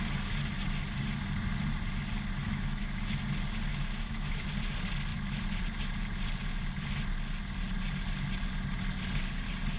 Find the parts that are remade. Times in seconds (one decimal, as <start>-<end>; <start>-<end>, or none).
2.4-3.2; 3.7-4.4